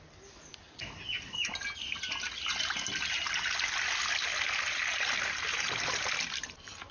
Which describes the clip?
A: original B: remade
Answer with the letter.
A